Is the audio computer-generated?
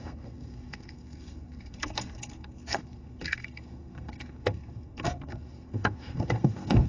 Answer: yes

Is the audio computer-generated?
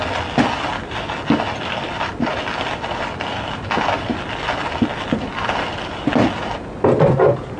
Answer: no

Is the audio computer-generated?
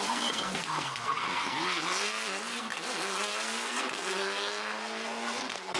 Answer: yes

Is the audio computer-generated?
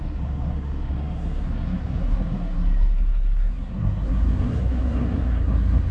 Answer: yes